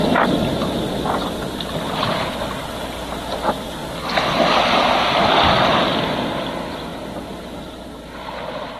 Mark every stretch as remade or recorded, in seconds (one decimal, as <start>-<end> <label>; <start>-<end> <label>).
0.0-8.8 recorded